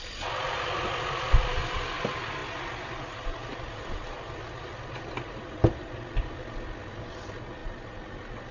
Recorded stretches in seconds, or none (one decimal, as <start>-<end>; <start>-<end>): 0.0-8.5